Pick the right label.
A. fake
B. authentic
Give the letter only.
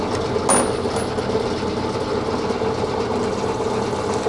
B